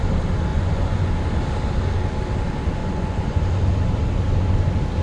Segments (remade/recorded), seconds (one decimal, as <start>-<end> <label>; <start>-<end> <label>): 0.0-0.5 recorded; 0.5-1.1 remade; 1.1-2.8 recorded; 2.8-3.4 remade; 3.4-5.0 recorded